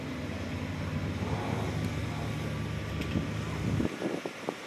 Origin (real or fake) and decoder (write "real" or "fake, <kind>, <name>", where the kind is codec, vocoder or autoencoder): real